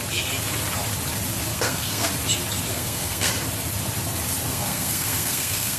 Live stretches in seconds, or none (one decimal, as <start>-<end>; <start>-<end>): 0.0-1.5; 2.1-2.7; 3.3-4.5